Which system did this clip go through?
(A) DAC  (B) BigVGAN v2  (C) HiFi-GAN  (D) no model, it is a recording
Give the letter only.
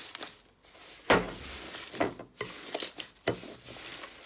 D